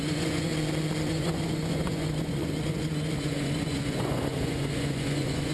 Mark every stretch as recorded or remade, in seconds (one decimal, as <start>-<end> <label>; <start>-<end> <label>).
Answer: 0.0-0.5 remade; 0.5-1.1 recorded; 1.1-5.5 remade